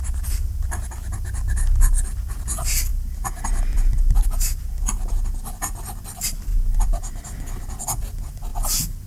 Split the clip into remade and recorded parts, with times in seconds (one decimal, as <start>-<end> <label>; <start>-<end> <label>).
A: 0.0-6.5 remade; 6.5-7.8 recorded; 7.8-8.5 remade; 8.5-9.1 recorded